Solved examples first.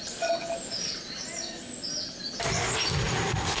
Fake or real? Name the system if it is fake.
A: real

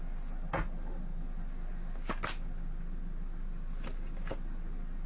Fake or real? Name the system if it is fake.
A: real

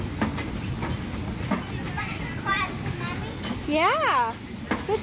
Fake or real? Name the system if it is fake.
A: real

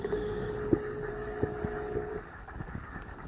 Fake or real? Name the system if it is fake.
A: fake, codec, DAC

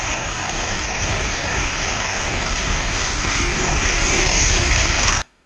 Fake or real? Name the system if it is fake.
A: fake, codec, DAC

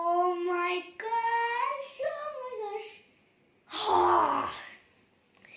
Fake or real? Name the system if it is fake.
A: real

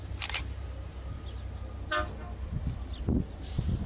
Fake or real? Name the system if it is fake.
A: real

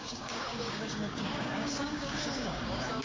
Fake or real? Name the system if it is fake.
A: fake, codec, DAC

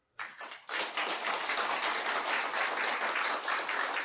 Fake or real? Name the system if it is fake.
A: real